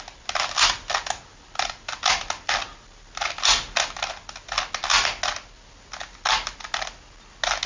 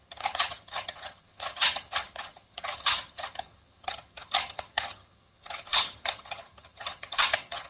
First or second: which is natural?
first